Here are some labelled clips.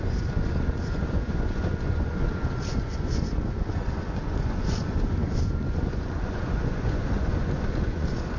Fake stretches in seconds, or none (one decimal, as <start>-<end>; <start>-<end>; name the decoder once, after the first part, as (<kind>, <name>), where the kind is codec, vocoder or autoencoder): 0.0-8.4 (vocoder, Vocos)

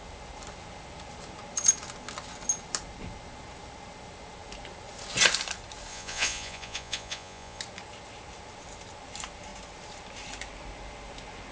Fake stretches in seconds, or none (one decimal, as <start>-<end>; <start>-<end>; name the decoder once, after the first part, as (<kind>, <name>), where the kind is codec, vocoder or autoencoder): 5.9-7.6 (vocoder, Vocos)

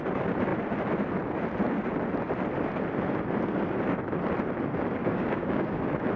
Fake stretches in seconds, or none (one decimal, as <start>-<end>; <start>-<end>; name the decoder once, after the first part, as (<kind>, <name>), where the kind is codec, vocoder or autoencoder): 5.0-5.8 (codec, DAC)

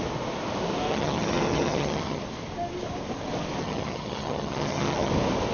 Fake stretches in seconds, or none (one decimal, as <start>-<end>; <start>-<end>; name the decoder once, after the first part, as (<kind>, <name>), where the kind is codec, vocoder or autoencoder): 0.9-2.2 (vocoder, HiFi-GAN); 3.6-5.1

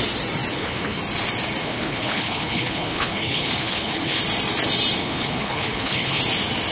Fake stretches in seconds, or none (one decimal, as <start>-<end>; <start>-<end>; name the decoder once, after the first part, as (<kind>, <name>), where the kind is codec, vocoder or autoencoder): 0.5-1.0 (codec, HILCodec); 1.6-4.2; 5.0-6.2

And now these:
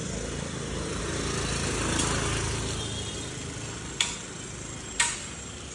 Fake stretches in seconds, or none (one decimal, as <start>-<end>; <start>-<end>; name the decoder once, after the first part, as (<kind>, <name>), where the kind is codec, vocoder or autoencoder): none

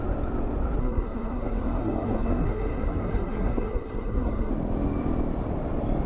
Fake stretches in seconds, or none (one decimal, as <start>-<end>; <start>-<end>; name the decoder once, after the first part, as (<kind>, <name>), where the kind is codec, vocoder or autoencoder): 0.8-4.5 (codec, SNAC)